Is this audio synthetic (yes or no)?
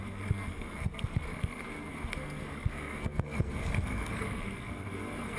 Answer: yes